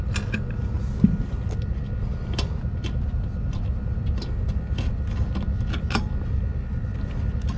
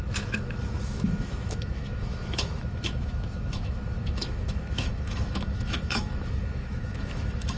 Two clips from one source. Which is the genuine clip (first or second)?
first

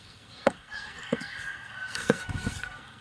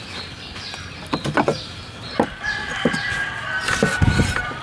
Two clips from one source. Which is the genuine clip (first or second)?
second